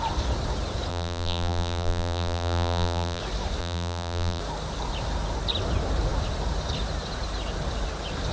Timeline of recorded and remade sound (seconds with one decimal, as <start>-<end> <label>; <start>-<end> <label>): 0.0-0.9 recorded; 0.9-3.2 remade; 3.2-3.6 recorded; 3.6-4.4 remade; 4.4-8.3 recorded